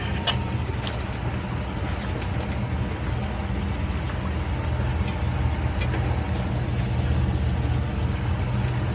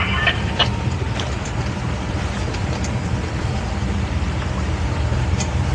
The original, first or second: first